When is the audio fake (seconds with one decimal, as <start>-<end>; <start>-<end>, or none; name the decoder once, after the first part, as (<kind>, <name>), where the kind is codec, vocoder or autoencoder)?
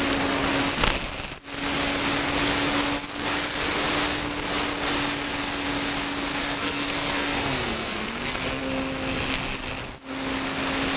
6.4-8.6 (codec, SNAC)